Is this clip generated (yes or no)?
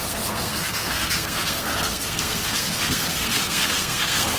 yes